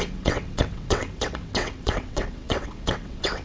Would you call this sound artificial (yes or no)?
yes